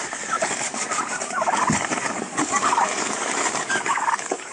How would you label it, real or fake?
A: fake